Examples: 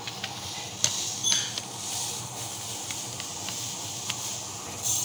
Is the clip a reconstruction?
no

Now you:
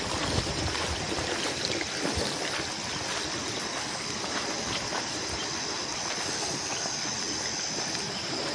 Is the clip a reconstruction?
no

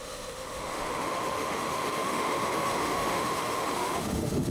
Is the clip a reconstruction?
yes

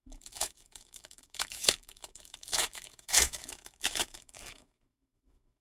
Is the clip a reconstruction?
yes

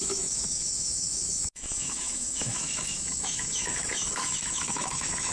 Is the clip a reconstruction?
yes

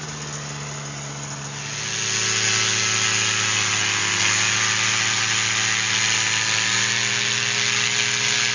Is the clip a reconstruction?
no